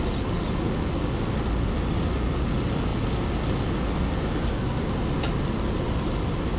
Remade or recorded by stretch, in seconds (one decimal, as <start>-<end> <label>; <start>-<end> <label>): 0.0-6.6 recorded

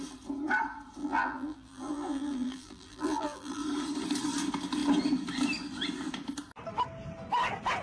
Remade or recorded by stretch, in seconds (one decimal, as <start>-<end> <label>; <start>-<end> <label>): 0.0-1.0 recorded; 1.0-3.6 remade; 3.6-7.8 recorded

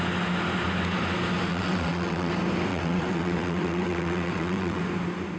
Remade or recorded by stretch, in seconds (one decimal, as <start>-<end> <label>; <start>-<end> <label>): 0.0-1.5 recorded; 1.5-2.3 remade; 2.3-2.7 recorded; 2.7-4.8 remade; 4.8-5.4 recorded

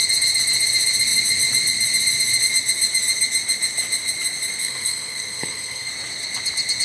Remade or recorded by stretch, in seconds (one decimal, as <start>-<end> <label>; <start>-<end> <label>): 0.0-4.6 recorded; 4.6-5.9 remade; 5.9-6.8 recorded

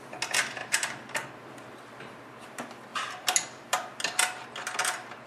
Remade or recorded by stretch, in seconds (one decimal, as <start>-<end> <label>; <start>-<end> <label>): 0.0-5.3 recorded

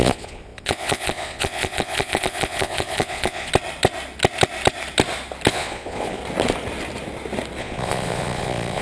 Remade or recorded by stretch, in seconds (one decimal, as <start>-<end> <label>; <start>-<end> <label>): 0.0-3.5 remade; 3.5-5.5 recorded; 5.5-6.2 remade; 6.2-7.6 recorded; 7.6-8.8 remade

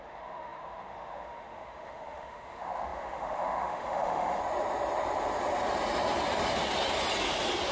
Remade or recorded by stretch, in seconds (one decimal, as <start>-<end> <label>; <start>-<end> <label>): 0.0-4.4 remade; 4.4-7.7 recorded